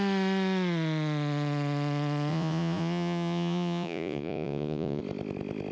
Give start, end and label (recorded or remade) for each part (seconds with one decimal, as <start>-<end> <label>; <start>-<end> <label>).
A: 0.0-2.3 recorded; 2.3-5.0 remade; 5.0-5.7 recorded